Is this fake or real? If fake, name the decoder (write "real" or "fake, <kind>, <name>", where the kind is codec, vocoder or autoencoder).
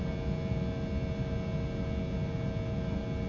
real